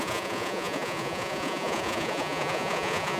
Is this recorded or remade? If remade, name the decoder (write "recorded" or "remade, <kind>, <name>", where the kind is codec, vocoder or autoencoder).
remade, vocoder, Vocos